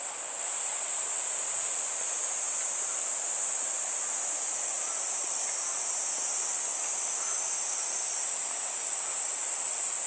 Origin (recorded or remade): recorded